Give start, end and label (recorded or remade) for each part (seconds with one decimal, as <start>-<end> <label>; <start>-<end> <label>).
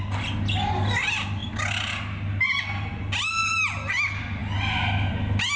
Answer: 0.0-5.6 recorded